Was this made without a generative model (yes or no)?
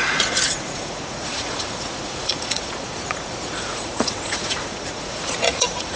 no